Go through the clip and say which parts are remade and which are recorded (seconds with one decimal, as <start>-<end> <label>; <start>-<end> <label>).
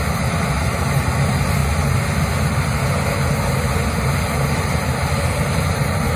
0.0-1.6 remade; 1.6-4.4 recorded; 4.4-6.2 remade